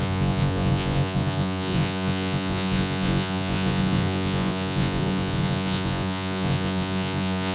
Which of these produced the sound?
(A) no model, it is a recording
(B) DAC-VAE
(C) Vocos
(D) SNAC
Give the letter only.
C